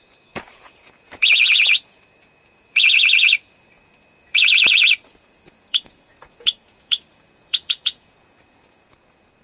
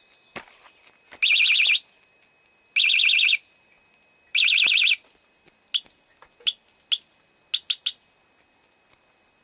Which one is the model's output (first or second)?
first